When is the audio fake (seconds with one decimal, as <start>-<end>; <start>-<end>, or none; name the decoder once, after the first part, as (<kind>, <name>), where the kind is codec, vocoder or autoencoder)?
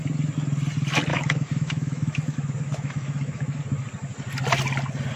1.1-3.6 (autoencoder, DAC-VAE)